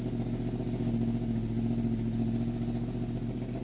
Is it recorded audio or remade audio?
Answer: recorded